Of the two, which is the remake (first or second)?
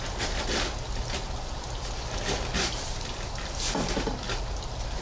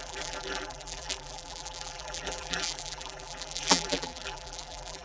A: second